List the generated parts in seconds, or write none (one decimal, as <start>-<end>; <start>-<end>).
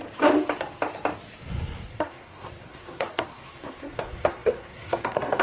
1.9-5.4